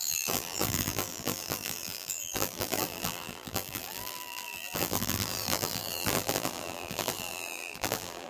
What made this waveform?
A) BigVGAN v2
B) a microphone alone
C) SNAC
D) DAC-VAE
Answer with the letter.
A